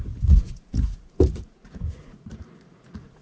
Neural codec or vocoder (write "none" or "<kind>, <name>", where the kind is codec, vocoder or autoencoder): vocoder, Vocos